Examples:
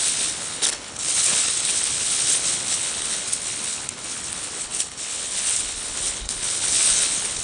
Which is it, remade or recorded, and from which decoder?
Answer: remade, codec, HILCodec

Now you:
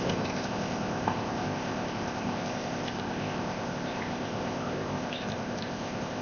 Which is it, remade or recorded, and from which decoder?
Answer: remade, codec, ZipCodec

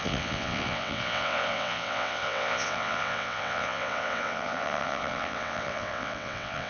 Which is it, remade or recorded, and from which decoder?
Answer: remade, vocoder, WaveNeXt